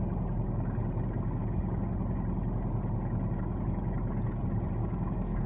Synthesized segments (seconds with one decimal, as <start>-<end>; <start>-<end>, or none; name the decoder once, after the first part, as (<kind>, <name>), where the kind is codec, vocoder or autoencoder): 4.8-5.5 (codec, DAC)